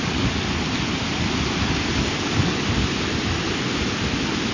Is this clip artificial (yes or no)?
no